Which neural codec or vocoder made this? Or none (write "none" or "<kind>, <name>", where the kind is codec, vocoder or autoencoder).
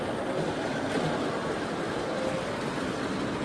none